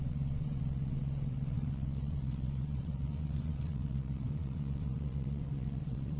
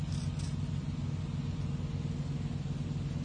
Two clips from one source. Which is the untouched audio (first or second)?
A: second